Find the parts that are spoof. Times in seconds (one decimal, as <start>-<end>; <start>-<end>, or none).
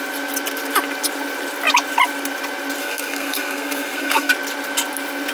2.8-4.3